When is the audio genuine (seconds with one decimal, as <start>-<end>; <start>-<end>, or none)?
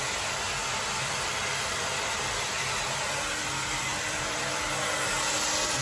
0.0-0.6; 2.7-3.9; 4.6-5.8